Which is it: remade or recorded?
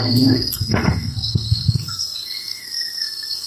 remade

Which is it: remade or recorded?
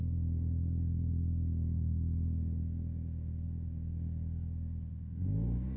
remade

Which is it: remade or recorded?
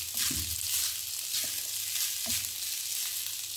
recorded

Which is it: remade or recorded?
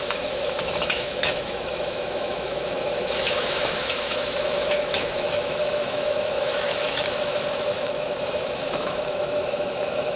remade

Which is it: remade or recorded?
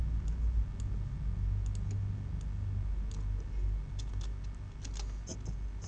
recorded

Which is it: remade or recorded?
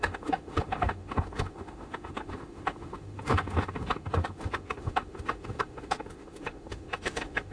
remade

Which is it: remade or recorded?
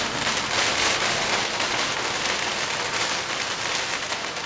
recorded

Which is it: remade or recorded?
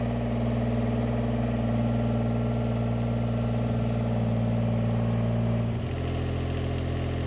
recorded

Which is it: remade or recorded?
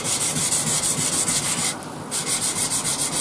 recorded